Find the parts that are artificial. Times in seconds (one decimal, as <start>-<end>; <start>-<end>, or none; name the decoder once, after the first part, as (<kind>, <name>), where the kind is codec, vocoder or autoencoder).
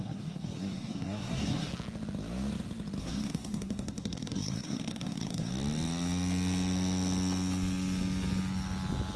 0.0-1.7 (codec, SNAC); 3.0-5.5